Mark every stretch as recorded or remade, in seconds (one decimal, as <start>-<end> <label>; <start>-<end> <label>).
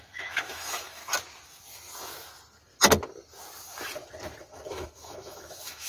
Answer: 0.0-1.0 remade; 1.0-4.5 recorded; 4.5-5.9 remade